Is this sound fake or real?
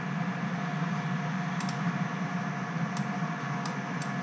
real